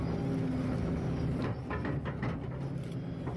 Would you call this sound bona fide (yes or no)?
yes